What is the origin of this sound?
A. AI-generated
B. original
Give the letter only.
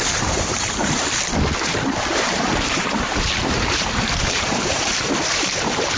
A